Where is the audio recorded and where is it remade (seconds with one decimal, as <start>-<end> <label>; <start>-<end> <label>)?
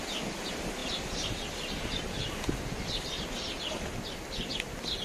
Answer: 0.0-0.8 recorded; 0.8-2.1 remade; 2.1-5.0 recorded